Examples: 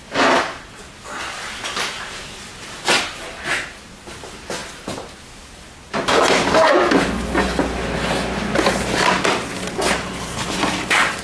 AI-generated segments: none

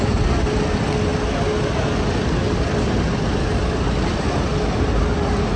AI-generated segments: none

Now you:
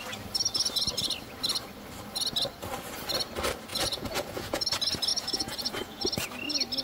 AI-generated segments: 3.7-4.6 (vocoder, Vocos); 5.1-6.0

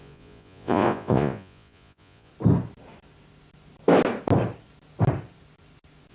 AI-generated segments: 0.0-2.3 (vocoder, Vocos)

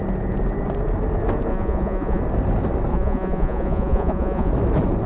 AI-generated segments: 1.5-2.2 (vocoder, Vocos); 2.9-4.5